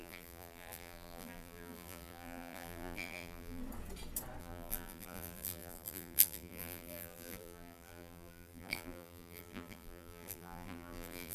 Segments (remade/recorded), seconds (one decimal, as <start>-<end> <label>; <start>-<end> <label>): 0.0-3.6 remade; 3.6-4.4 recorded; 4.4-11.3 remade